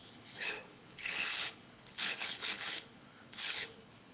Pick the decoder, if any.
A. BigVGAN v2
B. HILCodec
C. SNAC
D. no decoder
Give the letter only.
B